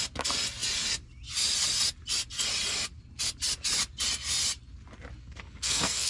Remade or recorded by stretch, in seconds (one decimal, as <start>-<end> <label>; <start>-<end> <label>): 0.0-5.2 recorded; 5.2-6.1 remade